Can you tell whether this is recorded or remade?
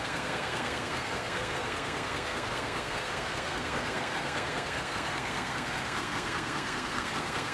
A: remade